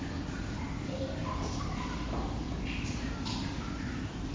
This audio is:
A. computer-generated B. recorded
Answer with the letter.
B